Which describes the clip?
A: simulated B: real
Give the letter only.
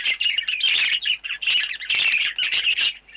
A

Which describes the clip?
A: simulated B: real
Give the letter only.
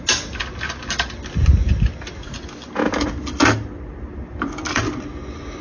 B